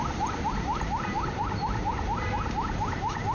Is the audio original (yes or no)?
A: no